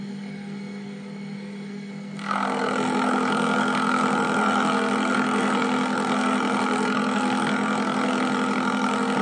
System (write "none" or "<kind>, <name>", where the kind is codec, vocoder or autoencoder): codec, SNAC